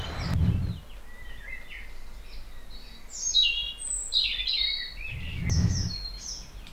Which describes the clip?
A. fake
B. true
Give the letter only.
B